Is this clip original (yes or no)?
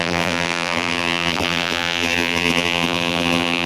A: no